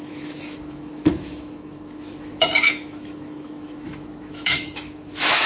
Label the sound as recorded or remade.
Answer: remade